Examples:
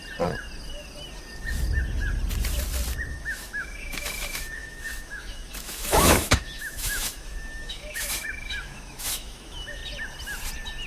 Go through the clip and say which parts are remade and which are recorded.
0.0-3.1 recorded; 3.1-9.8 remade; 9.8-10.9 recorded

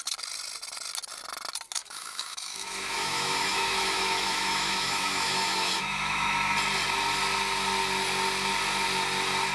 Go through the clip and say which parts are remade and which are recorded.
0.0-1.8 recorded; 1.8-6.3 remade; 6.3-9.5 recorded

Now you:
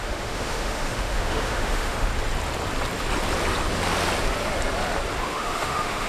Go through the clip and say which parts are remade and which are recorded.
0.0-2.1 remade; 2.1-5.2 recorded; 5.2-6.1 remade

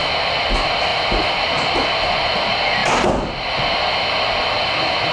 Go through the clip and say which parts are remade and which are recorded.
0.0-5.1 recorded

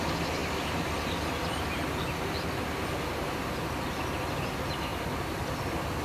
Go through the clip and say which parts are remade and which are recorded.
0.0-6.0 recorded